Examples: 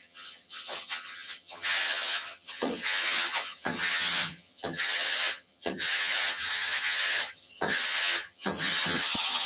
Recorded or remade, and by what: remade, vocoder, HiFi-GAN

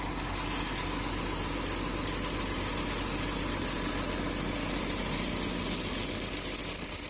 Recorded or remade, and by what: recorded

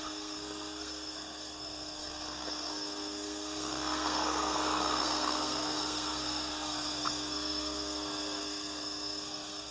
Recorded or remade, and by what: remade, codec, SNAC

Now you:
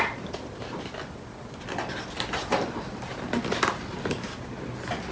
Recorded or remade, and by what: recorded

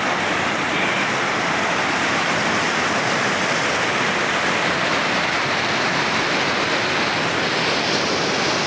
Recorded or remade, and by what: recorded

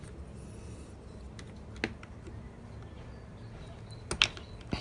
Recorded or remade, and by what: recorded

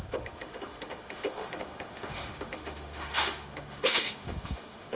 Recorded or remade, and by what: remade, autoencoder, DAC-VAE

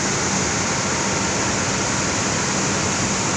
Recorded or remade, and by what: recorded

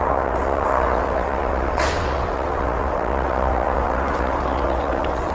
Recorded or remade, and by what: remade, vocoder, WaveNeXt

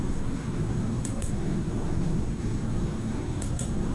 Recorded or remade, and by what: remade, codec, SNAC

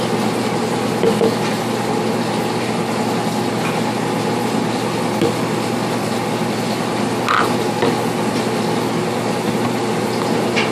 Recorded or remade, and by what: recorded